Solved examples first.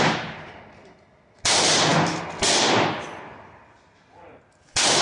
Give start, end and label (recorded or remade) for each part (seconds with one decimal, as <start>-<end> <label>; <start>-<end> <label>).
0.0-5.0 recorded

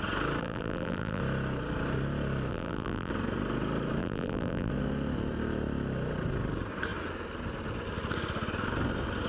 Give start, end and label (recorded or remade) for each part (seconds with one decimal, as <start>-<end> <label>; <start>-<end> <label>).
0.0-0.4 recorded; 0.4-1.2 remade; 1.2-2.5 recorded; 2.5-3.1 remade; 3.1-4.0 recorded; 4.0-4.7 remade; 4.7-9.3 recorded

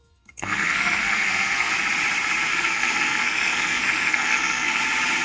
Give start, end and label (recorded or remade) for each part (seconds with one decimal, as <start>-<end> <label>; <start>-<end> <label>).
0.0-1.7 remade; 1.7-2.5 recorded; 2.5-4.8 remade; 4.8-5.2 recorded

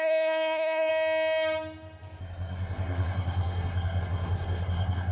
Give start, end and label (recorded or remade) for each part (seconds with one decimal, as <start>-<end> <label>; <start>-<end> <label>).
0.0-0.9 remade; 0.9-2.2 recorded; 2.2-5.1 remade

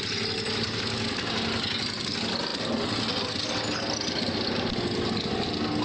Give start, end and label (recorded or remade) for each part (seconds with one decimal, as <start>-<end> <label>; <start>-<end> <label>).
0.0-5.8 recorded

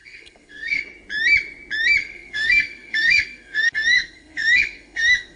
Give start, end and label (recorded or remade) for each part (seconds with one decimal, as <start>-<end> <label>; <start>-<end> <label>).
0.0-0.8 remade; 0.8-2.0 recorded; 2.0-5.4 remade

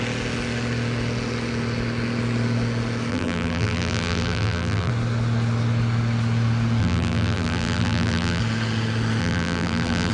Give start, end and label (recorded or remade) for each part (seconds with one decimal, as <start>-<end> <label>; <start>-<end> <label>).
0.0-3.1 recorded; 3.1-4.9 remade; 4.9-6.8 recorded; 6.8-8.4 remade; 8.4-9.2 recorded; 9.2-10.1 remade

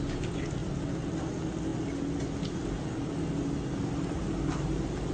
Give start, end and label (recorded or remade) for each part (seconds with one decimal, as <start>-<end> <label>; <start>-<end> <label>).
0.0-5.1 recorded